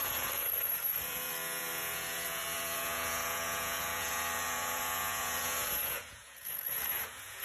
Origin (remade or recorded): remade